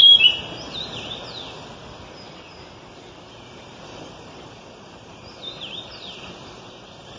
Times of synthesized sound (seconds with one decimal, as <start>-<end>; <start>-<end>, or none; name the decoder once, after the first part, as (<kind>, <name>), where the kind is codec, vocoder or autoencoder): 2.9-7.2 (vocoder, BigVGAN v2)